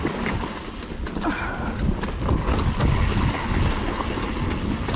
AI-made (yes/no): no